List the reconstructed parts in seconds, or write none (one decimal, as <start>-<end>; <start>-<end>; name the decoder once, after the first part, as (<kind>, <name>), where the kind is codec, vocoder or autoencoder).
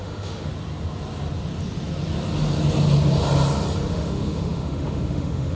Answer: 0.0-0.5 (autoencoder, DAC-VAE); 3.9-5.6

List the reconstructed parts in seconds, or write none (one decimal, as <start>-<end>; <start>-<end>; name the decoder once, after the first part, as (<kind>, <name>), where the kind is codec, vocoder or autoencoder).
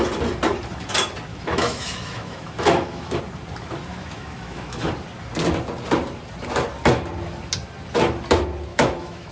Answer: 1.3-3.2 (autoencoder, DAC-VAE); 3.9-4.9; 8.7-9.3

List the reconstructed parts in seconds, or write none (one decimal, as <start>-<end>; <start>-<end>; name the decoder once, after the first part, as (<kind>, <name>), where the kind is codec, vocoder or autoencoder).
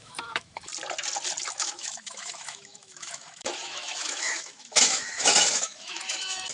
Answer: 0.0-0.7 (autoencoder, DAC-VAE); 1.5-6.5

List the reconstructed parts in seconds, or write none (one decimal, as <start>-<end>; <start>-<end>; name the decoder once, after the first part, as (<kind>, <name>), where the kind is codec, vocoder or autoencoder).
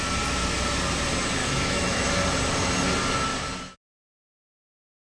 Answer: 1.4-2.0 (autoencoder, DAC-VAE)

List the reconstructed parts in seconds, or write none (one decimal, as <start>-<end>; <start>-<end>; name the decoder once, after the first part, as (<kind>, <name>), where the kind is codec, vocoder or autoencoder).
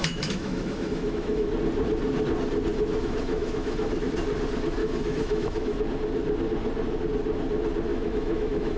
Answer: 0.0-1.5 (autoencoder, DAC-VAE); 2.7-3.9; 4.8-5.8; 7.9-8.8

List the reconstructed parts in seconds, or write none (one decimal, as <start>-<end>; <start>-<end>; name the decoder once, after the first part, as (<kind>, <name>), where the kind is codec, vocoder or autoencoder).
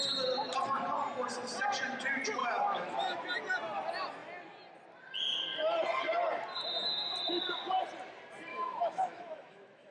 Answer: 2.4-3.2 (autoencoder, DAC-VAE); 8.5-9.9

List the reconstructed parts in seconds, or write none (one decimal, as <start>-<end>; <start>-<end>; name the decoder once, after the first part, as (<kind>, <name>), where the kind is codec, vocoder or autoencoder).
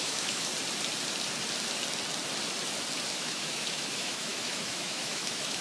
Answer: 0.0-0.5 (autoencoder, DAC-VAE); 3.1-5.6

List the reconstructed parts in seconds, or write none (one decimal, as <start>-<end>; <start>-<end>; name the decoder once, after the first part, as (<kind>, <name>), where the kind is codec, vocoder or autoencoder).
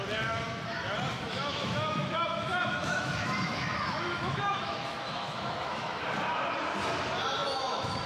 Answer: 1.1-6.0 (autoencoder, DAC-VAE); 7.4-8.1